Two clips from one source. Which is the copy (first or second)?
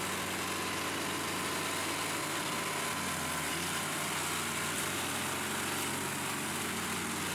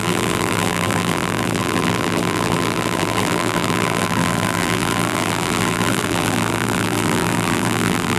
second